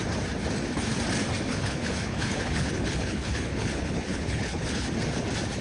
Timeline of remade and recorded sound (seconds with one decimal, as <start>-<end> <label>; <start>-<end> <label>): 0.0-1.5 recorded; 1.5-4.9 remade; 4.9-5.6 recorded